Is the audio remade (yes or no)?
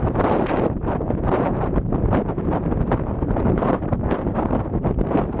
yes